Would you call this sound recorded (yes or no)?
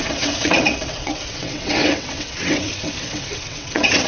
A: no